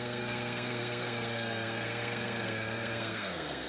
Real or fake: fake